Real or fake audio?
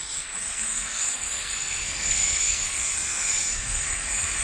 fake